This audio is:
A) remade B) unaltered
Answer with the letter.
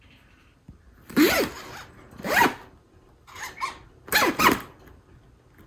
B